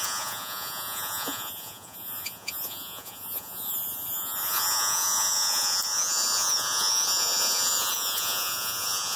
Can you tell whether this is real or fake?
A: fake